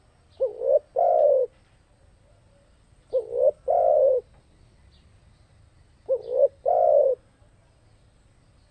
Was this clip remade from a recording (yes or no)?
no